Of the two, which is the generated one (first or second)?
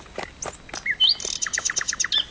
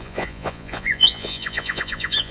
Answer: second